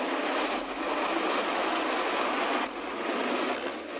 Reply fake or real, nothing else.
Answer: real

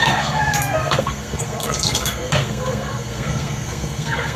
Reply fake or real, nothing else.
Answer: fake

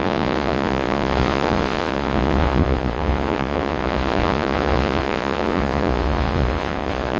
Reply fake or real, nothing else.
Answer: fake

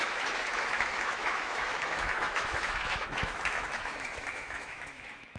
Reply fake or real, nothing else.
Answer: fake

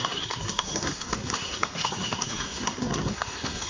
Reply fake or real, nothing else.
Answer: fake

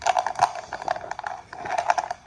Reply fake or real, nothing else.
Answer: real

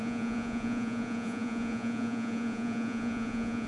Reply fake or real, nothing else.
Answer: fake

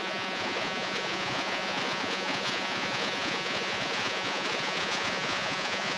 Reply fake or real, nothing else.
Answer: fake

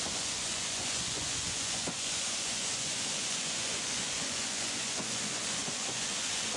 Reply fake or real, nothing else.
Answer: fake